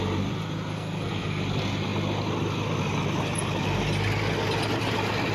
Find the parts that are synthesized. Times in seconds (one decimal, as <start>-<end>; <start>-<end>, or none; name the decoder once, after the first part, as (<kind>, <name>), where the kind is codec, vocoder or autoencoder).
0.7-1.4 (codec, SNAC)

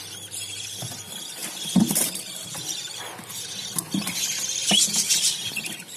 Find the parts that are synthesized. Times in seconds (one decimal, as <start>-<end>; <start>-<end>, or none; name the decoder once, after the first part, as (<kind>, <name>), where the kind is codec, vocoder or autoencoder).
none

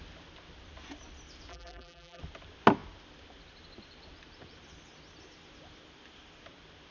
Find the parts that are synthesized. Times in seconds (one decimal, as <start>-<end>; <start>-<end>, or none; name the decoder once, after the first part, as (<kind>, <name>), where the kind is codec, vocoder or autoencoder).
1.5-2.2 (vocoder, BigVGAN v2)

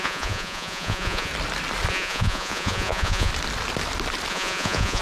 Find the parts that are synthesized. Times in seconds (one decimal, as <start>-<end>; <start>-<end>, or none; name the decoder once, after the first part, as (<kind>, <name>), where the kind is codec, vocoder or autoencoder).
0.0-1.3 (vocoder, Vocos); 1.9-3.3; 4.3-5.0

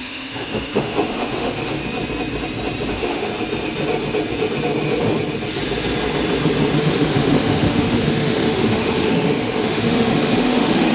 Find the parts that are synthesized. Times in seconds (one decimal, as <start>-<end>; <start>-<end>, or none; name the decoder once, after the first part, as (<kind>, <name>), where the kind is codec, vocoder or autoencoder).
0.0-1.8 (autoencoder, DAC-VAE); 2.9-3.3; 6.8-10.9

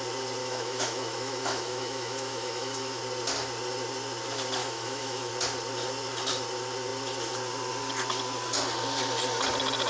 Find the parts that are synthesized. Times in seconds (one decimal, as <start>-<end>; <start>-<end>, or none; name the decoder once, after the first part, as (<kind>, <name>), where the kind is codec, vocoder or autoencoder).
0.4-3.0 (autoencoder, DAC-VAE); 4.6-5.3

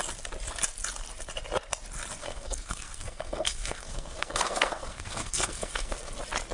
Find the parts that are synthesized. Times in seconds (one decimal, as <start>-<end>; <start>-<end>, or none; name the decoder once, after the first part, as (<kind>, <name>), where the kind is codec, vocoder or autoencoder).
2.2-6.1 (codec, SNAC)

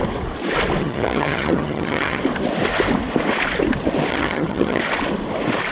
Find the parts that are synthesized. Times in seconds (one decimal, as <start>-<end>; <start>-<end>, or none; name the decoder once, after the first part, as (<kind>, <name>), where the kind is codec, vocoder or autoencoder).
0.8-2.2 (vocoder, HiFi-GAN); 4.1-4.8